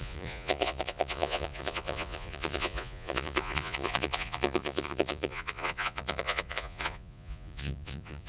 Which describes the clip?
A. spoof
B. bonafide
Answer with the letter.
A